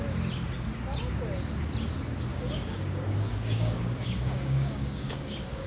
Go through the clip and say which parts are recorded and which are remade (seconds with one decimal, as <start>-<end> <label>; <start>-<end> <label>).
0.0-2.3 recorded; 2.3-5.7 remade